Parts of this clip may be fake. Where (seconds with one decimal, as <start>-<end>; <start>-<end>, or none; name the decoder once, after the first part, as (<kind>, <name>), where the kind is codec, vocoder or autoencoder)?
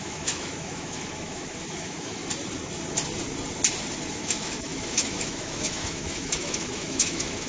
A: 0.0-2.2 (autoencoder, DAC-VAE); 4.1-7.5